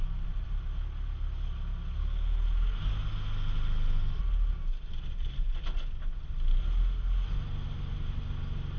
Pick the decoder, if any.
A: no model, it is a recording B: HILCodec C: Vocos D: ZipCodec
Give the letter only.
A